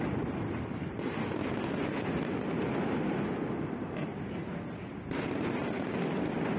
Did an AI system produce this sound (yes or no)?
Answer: no